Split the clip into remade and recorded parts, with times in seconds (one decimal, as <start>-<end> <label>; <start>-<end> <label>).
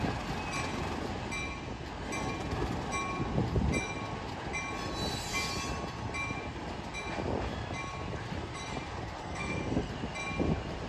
0.0-9.2 recorded; 9.2-9.9 remade; 9.9-10.9 recorded